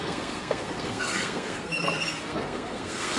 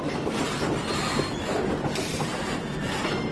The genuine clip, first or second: second